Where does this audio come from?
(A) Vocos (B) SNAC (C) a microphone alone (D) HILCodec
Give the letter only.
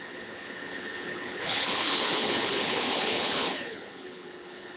D